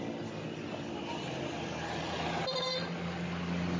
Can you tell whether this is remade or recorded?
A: recorded